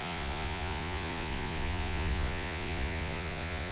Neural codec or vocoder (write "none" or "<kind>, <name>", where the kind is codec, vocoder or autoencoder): vocoder, Vocos